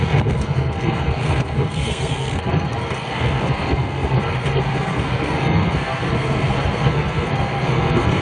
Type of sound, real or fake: fake